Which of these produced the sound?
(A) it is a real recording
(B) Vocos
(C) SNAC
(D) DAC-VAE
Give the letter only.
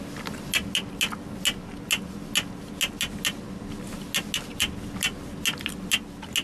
A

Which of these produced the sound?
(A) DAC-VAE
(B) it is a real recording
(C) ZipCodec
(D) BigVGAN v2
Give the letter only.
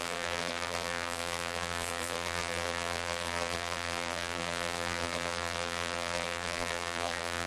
D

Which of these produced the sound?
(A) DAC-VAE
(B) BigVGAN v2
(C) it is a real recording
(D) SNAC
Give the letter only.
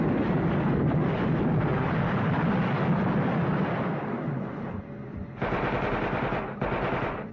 C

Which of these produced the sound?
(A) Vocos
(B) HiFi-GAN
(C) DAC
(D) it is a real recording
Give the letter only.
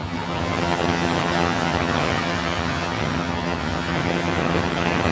B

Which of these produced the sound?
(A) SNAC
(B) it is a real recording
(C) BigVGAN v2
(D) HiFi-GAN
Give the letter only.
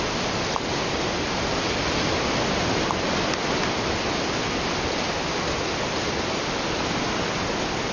B